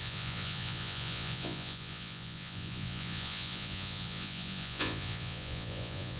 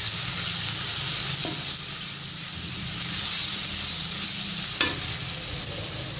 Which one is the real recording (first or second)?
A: second